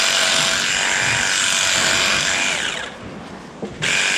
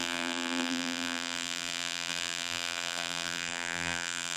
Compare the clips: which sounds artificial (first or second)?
second